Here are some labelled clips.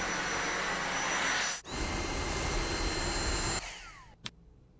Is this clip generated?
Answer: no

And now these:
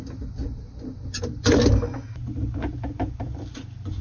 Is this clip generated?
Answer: no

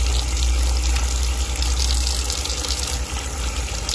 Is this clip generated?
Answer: no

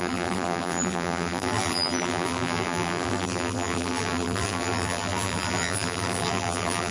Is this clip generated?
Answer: yes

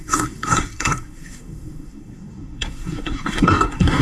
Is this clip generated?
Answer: yes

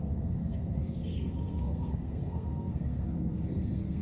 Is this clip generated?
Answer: yes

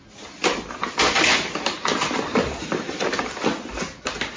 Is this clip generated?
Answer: no